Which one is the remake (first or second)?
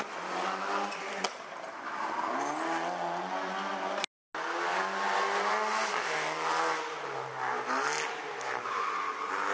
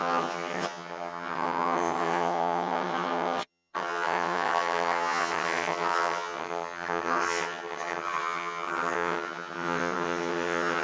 second